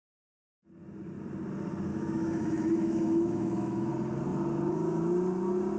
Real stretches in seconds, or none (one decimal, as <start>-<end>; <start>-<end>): 0.0-1.9; 3.9-5.8